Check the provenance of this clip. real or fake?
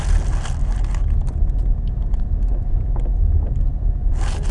real